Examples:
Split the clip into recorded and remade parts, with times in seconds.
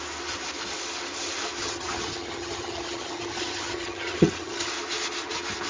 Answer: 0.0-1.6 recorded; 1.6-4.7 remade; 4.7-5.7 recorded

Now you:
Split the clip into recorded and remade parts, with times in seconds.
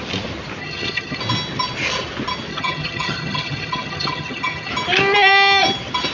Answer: 0.0-0.6 recorded; 0.6-1.2 remade; 1.2-2.5 recorded; 2.5-4.7 remade; 4.7-6.1 recorded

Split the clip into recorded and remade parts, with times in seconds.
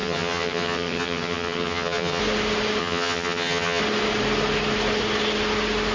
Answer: 0.0-2.2 remade; 2.2-2.8 recorded; 2.8-3.8 remade; 3.8-5.9 recorded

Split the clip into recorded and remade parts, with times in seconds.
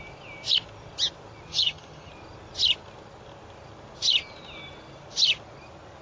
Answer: 0.0-1.5 recorded; 1.5-2.1 remade; 2.1-6.0 recorded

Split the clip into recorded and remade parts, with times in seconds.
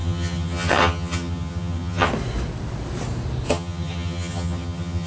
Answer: 0.0-2.1 remade; 2.1-3.5 recorded; 3.5-5.1 remade